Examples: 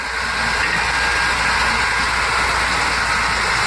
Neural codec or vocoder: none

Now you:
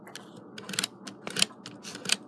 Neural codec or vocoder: none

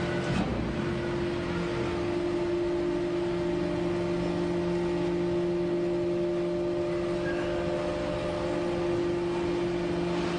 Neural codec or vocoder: none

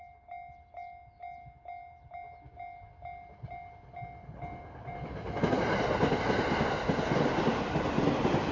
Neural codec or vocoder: none